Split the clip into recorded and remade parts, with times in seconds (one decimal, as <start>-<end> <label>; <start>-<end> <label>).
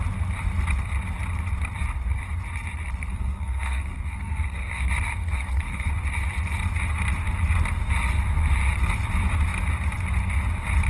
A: 0.0-3.1 recorded; 3.1-4.8 remade; 4.8-5.2 recorded; 5.2-5.9 remade; 5.9-10.9 recorded